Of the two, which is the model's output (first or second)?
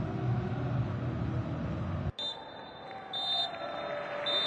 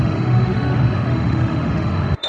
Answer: second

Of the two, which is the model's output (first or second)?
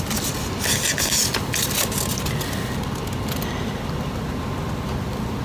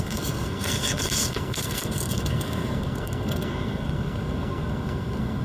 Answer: second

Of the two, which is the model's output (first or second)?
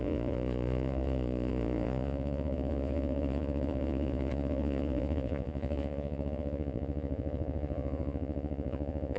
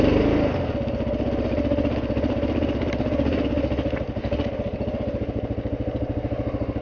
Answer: first